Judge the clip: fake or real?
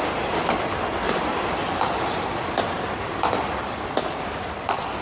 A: real